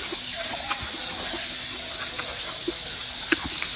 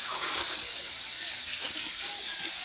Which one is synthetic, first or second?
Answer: second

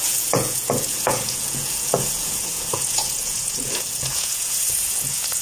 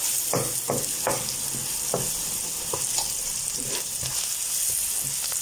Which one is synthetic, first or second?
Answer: first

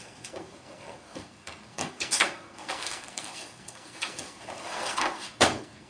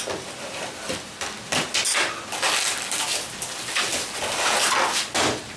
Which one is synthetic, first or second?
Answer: first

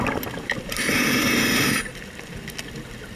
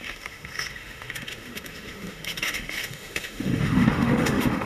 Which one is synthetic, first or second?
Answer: second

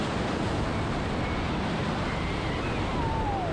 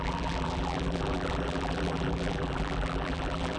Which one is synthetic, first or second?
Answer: second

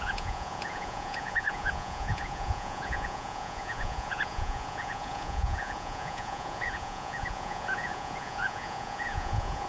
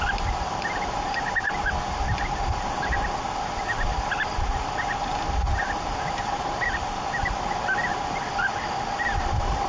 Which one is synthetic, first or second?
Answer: first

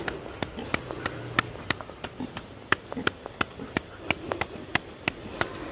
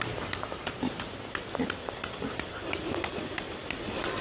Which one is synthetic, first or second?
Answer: second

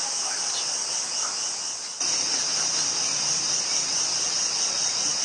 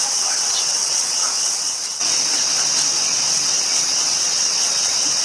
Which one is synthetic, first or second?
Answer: second